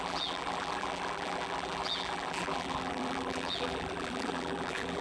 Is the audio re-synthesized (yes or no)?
yes